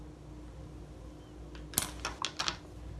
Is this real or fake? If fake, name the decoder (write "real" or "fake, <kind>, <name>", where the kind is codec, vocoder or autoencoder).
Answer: real